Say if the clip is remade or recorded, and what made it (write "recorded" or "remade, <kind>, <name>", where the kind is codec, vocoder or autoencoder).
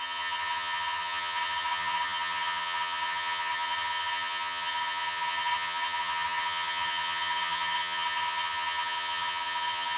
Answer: remade, vocoder, HiFi-GAN